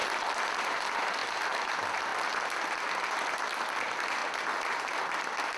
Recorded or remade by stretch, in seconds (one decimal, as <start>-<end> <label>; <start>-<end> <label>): 0.0-5.6 recorded

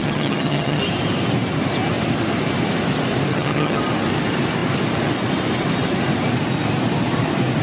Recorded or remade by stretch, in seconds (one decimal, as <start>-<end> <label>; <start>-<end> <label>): 0.0-0.8 remade; 0.8-3.3 recorded; 3.3-3.8 remade; 3.8-7.6 recorded